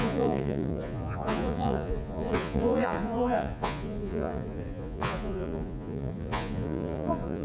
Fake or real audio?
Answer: fake